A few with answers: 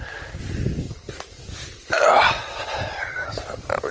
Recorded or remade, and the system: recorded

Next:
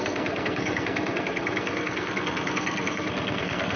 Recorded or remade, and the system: remade, codec, SNAC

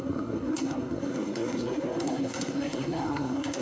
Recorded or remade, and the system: remade, codec, SNAC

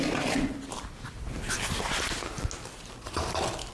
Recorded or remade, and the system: recorded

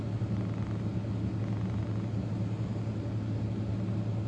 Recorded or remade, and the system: recorded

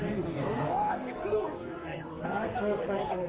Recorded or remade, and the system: remade, codec, SNAC